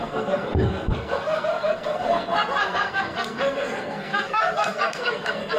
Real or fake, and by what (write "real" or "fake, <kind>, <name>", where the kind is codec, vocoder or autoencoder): fake, codec, SNAC